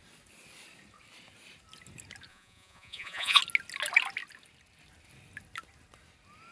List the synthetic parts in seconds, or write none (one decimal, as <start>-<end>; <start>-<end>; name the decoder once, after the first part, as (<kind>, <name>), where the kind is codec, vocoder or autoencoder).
2.3-3.4 (vocoder, Vocos)